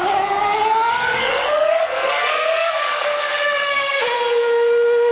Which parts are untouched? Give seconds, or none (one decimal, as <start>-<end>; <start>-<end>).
0.0-0.9; 4.0-5.1